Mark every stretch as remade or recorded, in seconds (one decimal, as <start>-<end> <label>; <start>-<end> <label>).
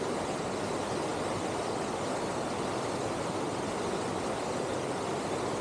0.0-5.6 recorded